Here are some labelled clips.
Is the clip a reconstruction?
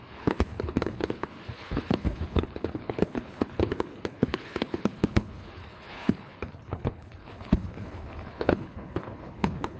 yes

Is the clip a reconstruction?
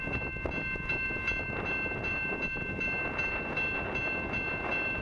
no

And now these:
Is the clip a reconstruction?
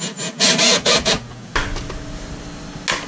no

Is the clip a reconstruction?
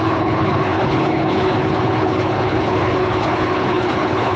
yes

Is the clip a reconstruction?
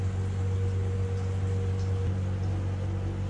no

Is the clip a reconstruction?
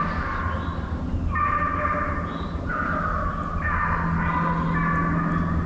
no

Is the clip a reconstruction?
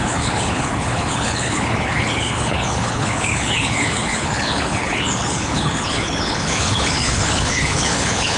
yes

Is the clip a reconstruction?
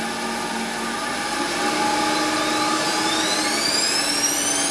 no